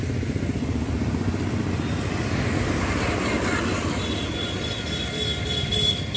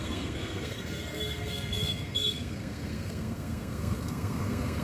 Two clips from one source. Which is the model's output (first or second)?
second